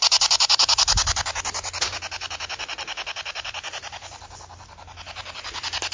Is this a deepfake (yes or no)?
no